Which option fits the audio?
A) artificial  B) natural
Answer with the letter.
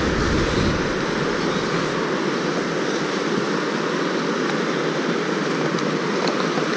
B